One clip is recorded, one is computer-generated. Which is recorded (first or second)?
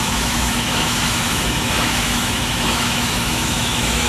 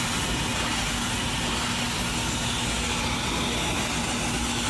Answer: second